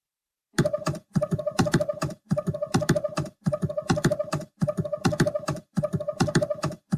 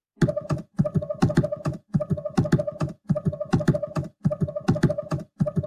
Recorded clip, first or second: second